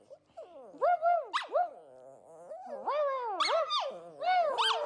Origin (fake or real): real